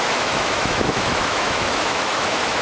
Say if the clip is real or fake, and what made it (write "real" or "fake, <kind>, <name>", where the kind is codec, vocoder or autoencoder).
fake, autoencoder, DAC-VAE